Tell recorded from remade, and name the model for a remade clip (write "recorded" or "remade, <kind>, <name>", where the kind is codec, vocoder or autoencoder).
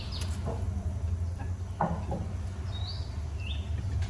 recorded